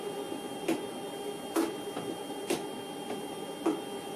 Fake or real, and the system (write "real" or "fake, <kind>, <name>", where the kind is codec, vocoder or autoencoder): fake, vocoder, BigVGAN v2